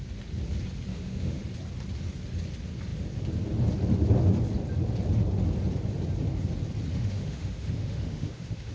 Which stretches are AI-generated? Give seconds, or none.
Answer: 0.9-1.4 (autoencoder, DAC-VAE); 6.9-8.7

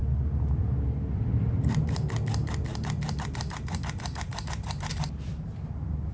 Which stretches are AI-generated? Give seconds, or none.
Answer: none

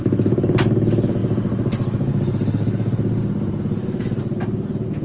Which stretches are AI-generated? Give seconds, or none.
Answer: none

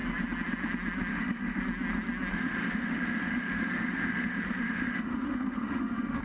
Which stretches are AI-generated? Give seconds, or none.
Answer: 1.1-1.6 (autoencoder, DAC-VAE); 2.3-6.2

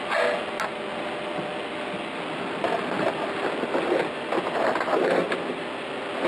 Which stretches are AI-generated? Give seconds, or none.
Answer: none

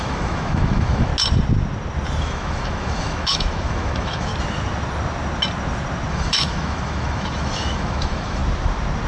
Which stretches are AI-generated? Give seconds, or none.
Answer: 0.0-1.1 (autoencoder, DAC-VAE); 2.2-4.3; 6.1-8.4